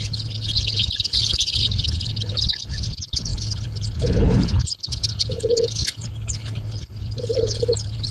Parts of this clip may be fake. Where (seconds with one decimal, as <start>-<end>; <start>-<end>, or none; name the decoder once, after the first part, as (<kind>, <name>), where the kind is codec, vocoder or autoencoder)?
0.0-8.1 (codec, HILCodec)